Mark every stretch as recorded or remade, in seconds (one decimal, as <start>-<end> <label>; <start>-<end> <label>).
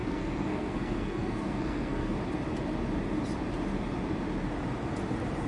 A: 0.0-2.2 remade; 2.2-5.5 recorded